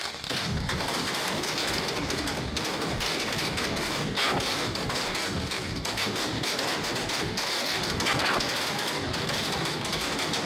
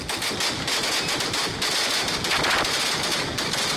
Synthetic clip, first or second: first